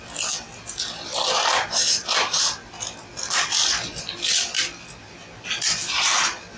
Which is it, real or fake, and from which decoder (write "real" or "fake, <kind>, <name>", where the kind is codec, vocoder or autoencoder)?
real